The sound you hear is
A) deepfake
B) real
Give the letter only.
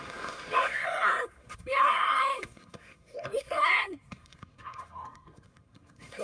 A